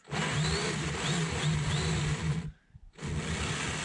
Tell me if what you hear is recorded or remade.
recorded